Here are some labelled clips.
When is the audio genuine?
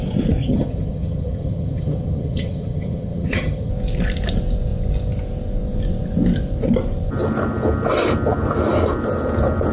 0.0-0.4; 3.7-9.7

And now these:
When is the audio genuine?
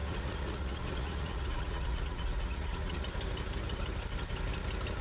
3.0-5.0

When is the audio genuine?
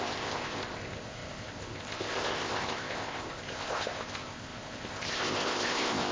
none